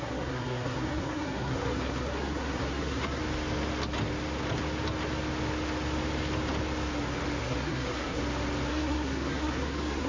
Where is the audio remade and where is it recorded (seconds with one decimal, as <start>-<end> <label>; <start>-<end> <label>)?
0.0-3.2 remade; 3.2-7.4 recorded; 7.4-8.2 remade; 8.2-8.7 recorded; 8.7-10.1 remade